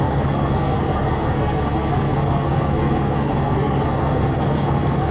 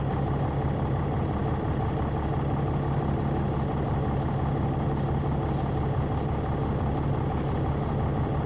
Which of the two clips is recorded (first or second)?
second